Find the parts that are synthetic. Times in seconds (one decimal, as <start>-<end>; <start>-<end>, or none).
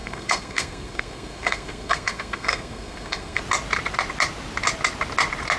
0.0-3.4